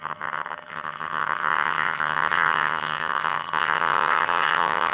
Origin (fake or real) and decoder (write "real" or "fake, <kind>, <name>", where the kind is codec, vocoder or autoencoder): fake, vocoder, HiFi-GAN